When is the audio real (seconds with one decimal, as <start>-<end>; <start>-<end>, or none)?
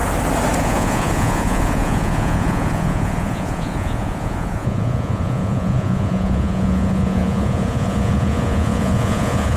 0.0-0.6